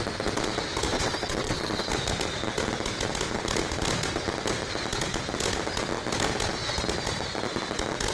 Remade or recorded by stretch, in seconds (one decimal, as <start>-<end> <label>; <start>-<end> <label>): 0.0-0.9 recorded; 0.9-1.9 remade; 1.9-8.1 recorded